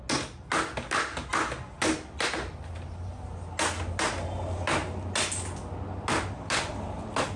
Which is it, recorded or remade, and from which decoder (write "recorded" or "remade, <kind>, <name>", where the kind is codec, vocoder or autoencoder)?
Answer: recorded